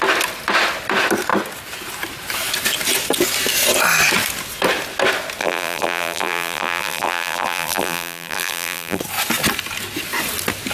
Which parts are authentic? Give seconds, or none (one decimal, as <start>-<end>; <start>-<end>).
0.0-5.4; 9.0-10.7